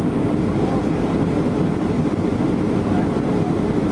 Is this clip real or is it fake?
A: real